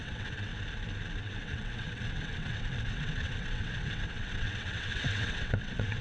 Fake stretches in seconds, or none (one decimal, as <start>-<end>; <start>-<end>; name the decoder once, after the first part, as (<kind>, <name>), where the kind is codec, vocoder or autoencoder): 0.0-0.5 (vocoder, WaveNeXt); 1.2-6.0